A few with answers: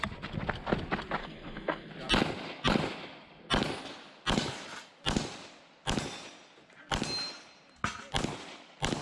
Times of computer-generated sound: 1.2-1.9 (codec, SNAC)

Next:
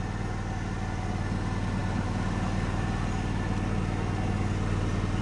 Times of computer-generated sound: none

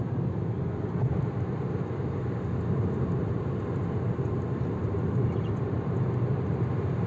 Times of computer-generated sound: none

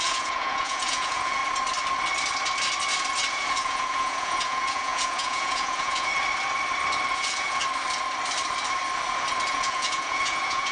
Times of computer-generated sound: 0.0-1.4 (vocoder, Vocos); 3.3-6.1; 7.1-7.6; 9.5-10.7

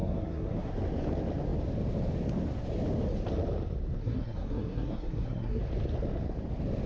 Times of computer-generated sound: 0.0-0.7 (codec, SNAC); 4.0-5.6

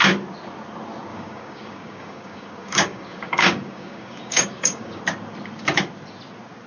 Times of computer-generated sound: 1.1-5.0 (codec, DAC)

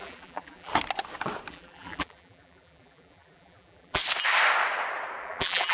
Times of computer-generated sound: 0.0-0.7 (vocoder, BigVGAN v2); 1.5-4.0; 5.2-5.7

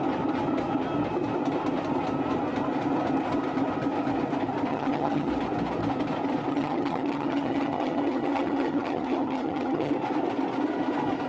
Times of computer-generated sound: 4.7-5.3 (vocoder, HiFi-GAN); 6.5-9.9